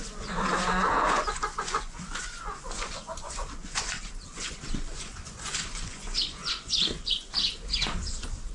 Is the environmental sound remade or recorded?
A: remade